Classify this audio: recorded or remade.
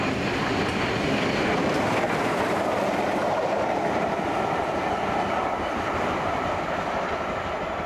recorded